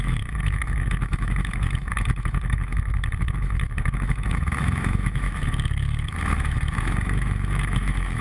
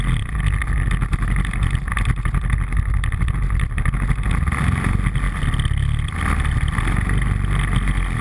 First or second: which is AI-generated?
first